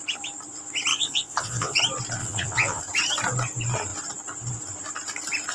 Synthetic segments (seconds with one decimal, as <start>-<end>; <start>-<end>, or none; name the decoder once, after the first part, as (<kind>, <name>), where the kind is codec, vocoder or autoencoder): 0.9-1.8 (vocoder, Vocos); 2.2-2.8

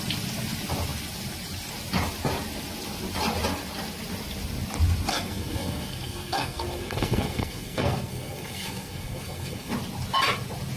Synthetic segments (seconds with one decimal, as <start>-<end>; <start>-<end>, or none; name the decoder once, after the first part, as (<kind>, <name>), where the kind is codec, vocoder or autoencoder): 5.1-9.7 (codec, SNAC)

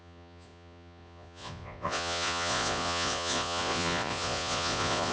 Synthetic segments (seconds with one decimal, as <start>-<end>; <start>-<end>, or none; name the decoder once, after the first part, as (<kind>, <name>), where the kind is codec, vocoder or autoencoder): 0.0-5.1 (vocoder, Vocos)